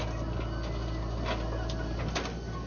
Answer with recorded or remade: recorded